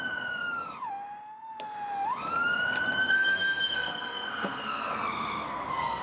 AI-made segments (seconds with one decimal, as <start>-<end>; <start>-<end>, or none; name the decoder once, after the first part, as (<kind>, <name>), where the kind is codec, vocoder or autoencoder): 3.1-6.0 (codec, SNAC)